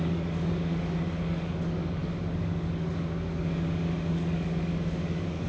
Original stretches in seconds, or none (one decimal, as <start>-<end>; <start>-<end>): none